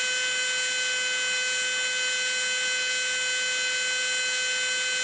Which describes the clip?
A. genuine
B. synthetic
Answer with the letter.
A